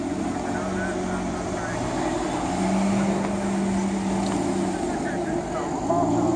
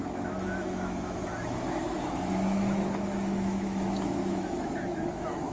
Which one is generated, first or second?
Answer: second